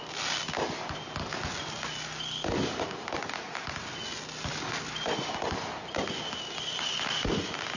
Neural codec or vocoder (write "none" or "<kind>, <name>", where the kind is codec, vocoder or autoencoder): none